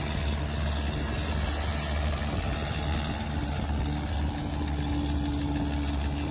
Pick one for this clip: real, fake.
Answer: real